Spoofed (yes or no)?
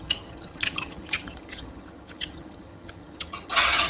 yes